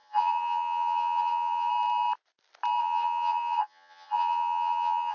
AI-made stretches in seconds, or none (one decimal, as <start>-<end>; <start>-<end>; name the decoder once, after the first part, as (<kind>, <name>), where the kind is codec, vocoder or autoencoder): 0.0-1.7 (vocoder, HiFi-GAN); 2.8-5.1